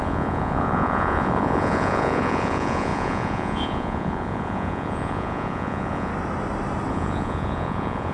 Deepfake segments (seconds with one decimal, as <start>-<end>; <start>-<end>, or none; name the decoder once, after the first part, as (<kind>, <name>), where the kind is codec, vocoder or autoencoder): 0.0-6.1 (vocoder, Vocos); 6.9-8.1